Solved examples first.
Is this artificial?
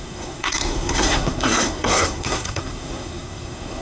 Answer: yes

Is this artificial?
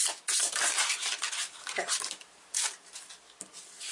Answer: no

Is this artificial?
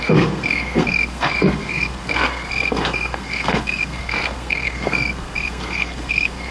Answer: yes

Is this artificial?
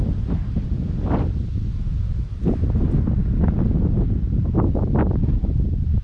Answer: no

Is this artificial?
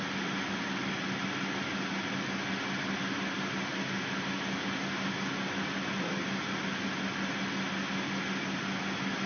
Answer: no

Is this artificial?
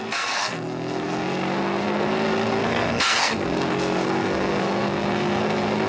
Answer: yes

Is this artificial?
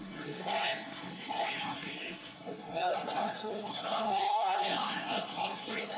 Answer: yes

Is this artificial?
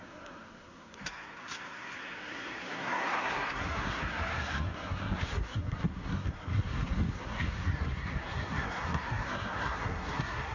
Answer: yes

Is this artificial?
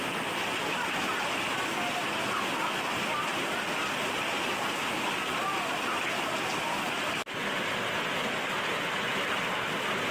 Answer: no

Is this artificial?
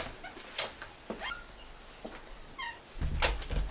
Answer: no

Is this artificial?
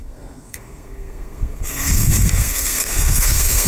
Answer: yes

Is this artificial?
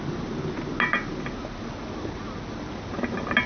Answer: no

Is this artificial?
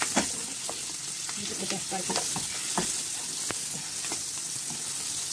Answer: no